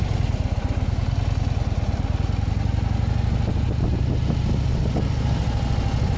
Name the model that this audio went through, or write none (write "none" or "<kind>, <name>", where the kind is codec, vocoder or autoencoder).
none